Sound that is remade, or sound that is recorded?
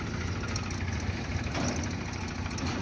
recorded